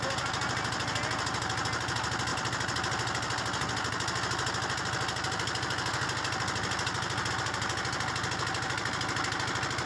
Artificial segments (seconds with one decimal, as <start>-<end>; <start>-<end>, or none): none